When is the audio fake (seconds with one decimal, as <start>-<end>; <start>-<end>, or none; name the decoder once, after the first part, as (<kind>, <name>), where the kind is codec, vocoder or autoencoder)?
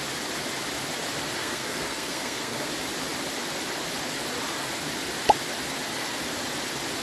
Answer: 1.4-2.7 (codec, SNAC)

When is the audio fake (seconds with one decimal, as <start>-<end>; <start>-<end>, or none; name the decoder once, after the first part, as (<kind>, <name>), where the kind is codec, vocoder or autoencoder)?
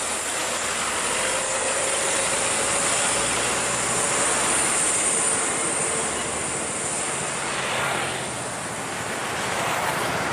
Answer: none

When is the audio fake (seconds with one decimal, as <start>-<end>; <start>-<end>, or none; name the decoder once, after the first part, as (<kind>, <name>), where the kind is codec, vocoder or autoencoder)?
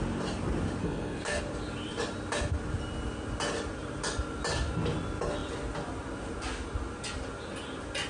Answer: 0.8-1.4 (codec, SNAC)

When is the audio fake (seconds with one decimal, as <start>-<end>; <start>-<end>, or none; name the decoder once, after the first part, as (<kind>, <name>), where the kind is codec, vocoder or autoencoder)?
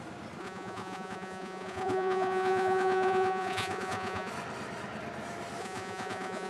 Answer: 0.4-4.3 (vocoder, Vocos); 5.6-6.5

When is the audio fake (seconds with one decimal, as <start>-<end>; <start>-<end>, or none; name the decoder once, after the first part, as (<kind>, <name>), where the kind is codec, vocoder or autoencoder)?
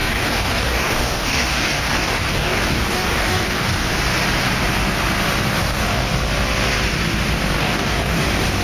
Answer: 0.0-3.9 (codec, DAC); 5.6-6.1; 7.6-8.2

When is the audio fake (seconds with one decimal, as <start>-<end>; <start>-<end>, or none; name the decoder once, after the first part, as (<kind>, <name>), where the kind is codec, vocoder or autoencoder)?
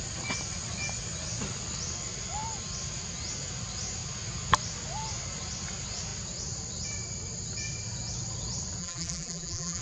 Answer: 8.8-9.8 (vocoder, BigVGAN v2)